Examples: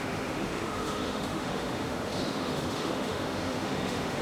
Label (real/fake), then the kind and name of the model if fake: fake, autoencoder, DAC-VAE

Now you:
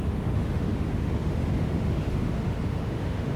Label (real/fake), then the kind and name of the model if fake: fake, autoencoder, DAC-VAE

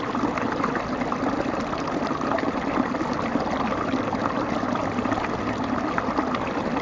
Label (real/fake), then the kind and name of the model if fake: real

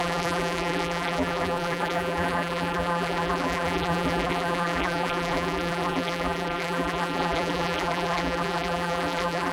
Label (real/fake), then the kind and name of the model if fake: fake, vocoder, BigVGAN v2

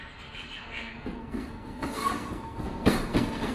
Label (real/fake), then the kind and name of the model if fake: fake, codec, SNAC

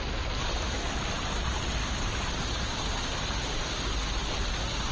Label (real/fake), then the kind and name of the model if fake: real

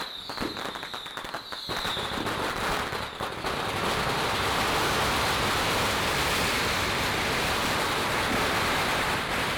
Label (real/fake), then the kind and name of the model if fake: real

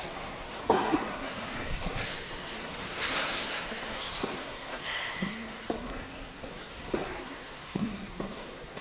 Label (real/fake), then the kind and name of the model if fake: fake, codec, SNAC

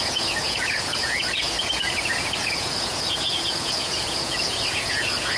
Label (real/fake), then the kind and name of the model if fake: fake, vocoder, Vocos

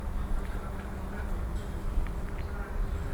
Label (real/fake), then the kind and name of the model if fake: fake, vocoder, BigVGAN v2